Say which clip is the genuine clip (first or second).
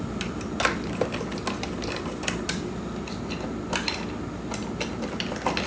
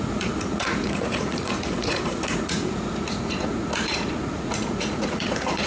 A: first